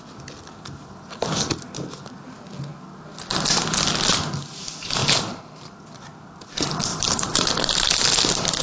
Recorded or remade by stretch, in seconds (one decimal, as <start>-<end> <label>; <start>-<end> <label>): 0.0-5.0 recorded; 5.0-5.8 remade; 5.8-6.9 recorded; 6.9-7.5 remade; 7.5-8.6 recorded